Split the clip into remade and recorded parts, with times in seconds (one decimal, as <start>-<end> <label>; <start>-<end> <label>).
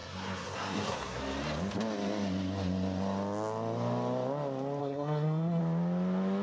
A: 0.0-1.2 remade; 1.2-4.8 recorded; 4.8-5.6 remade; 5.6-6.4 recorded